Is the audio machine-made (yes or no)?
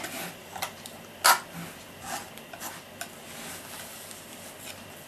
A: no